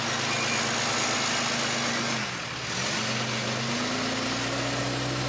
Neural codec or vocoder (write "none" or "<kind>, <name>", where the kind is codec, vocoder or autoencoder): none